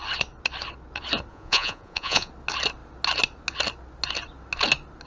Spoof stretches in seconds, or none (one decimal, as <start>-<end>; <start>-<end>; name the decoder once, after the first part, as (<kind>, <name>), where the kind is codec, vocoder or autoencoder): 1.3-2.3 (vocoder, Vocos)